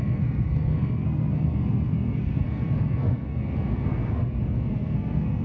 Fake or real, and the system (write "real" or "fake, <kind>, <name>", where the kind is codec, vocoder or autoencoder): fake, codec, SNAC